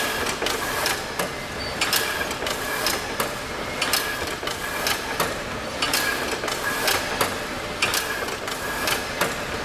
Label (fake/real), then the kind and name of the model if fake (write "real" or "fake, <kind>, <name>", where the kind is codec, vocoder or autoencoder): real